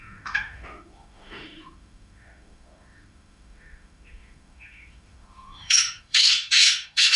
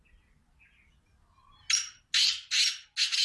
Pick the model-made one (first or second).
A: first